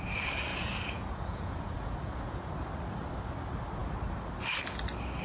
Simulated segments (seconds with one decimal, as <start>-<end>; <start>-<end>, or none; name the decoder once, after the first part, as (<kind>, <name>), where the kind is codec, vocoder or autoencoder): 0.5-2.5 (vocoder, Vocos)